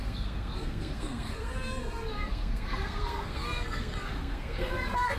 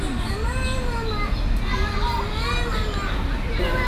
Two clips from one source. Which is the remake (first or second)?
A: first